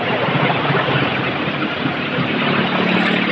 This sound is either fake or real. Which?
real